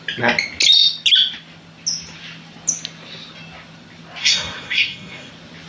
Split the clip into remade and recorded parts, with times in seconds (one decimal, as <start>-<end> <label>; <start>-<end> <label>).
0.0-4.2 recorded; 4.2-5.3 remade; 5.3-5.7 recorded